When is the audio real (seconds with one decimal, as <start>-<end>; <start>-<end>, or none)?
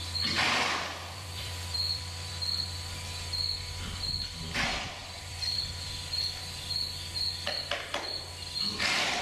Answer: 0.0-0.9; 2.3-5.0; 5.6-9.2